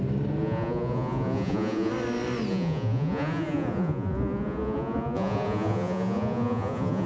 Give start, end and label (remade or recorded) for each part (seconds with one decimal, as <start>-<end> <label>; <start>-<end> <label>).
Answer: 0.0-0.4 recorded; 0.4-1.9 remade; 1.9-2.5 recorded; 2.5-7.1 remade